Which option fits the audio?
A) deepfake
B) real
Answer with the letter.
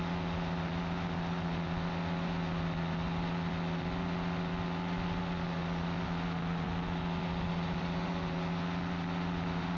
B